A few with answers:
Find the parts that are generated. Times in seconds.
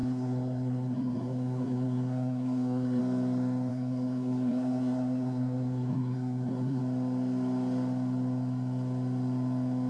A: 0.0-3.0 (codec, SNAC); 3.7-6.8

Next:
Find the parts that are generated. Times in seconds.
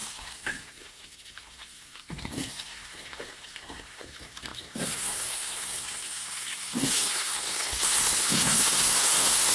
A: 0.0-9.5 (codec, SNAC)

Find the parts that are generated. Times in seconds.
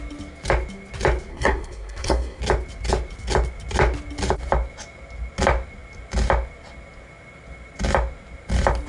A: 1.3-2.4 (codec, SNAC)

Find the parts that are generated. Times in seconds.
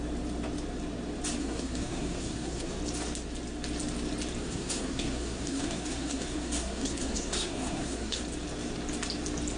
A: 1.4-2.8 (codec, SNAC); 4.4-8.2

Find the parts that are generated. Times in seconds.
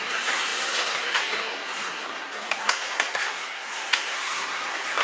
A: 0.0-5.0 (codec, SNAC)